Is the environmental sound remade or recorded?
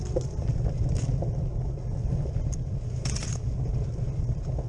recorded